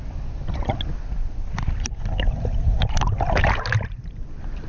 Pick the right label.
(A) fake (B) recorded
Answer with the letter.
B